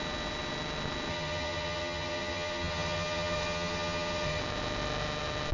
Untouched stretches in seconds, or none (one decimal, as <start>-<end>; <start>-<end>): 0.0-1.1; 4.4-5.5